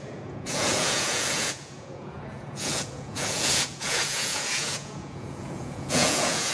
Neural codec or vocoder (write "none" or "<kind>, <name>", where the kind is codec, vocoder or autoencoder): vocoder, Vocos